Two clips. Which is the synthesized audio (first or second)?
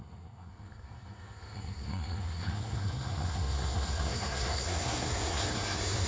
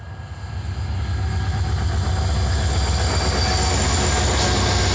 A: first